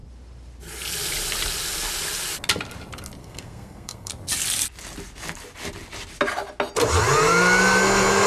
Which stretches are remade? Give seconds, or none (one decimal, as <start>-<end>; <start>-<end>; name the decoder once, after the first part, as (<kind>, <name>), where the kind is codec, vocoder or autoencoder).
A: 3.2-4.1 (codec, SNAC)